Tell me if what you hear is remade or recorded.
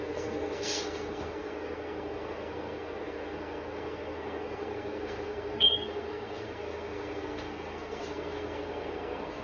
remade